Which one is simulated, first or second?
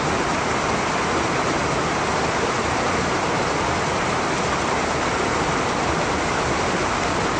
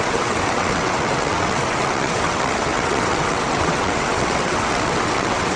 second